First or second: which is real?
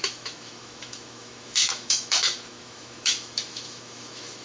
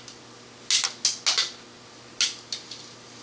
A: second